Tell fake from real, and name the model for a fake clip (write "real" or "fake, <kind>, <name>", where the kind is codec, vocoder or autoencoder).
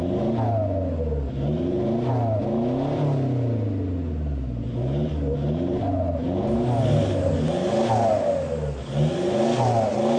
real